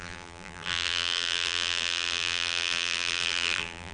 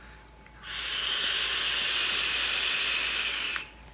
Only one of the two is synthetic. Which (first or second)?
first